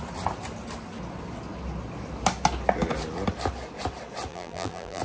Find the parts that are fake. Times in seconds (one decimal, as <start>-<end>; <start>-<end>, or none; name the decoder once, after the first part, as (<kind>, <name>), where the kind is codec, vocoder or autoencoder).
4.3-5.0 (vocoder, BigVGAN v2)